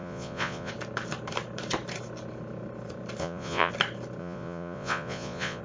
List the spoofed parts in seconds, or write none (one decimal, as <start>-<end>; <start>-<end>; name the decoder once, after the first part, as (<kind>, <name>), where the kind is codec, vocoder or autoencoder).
0.0-0.7 (vocoder, Vocos); 3.2-3.7; 4.2-5.6